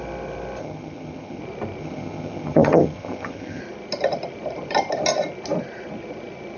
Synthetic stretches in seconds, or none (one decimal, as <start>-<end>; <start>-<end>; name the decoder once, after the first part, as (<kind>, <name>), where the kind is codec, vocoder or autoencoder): 0.6-1.4 (vocoder, HiFi-GAN); 1.8-3.6